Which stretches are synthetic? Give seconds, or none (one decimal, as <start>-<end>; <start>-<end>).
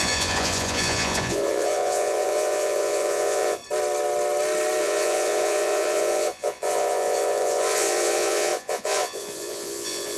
0.0-3.6; 4.8-10.2